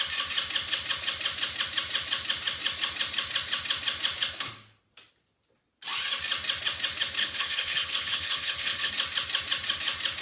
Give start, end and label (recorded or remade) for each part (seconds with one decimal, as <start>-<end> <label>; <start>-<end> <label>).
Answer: 0.0-7.2 recorded; 7.2-8.9 remade; 8.9-10.2 recorded